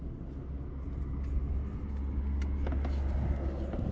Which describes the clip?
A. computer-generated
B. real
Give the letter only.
B